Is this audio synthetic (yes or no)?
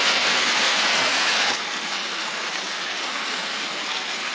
yes